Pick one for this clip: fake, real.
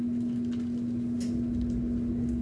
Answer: real